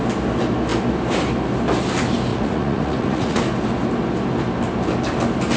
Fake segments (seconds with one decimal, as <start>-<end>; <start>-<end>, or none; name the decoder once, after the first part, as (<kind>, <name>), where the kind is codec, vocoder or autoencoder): 2.3-3.4 (vocoder, Vocos)